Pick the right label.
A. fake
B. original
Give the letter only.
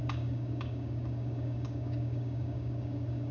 A